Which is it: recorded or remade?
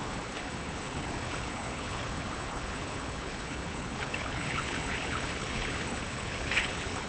remade